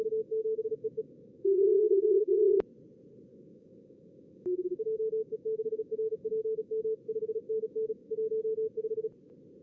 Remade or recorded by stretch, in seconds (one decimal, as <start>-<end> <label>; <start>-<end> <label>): 0.0-2.5 remade; 2.5-3.3 recorded; 3.3-7.0 remade; 7.0-7.4 recorded; 7.4-8.1 remade; 8.1-9.6 recorded